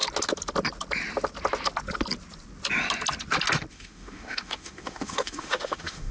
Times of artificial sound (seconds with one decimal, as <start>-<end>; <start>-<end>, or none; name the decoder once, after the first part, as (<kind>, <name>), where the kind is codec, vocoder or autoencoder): 3.7-6.1 (autoencoder, DAC-VAE)